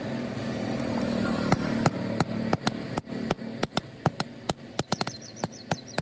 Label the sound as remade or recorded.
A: recorded